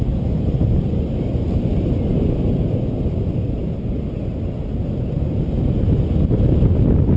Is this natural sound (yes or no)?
yes